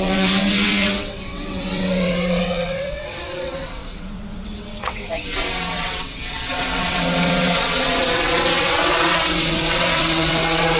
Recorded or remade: remade